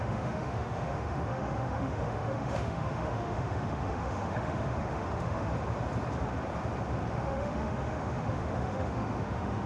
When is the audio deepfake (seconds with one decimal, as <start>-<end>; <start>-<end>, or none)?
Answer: 0.0-5.5; 7.1-9.7